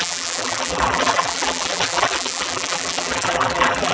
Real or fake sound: fake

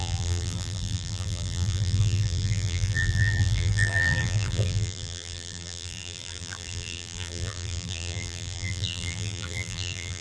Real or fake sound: fake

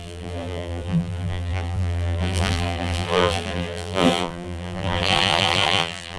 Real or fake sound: fake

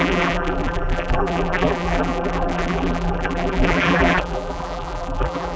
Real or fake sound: fake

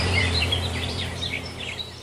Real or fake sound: fake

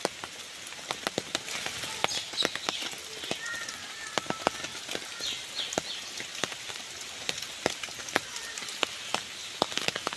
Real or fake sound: real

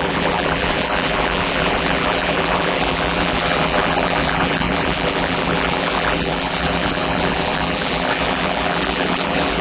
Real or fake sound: fake